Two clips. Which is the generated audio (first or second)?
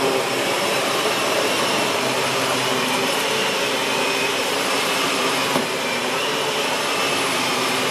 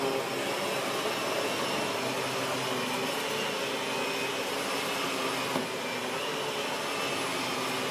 first